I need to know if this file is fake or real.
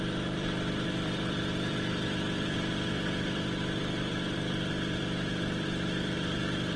fake